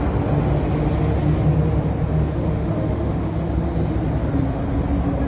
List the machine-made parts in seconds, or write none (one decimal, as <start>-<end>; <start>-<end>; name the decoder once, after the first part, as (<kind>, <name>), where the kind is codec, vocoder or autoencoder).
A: 2.1-3.3 (autoencoder, DAC-VAE)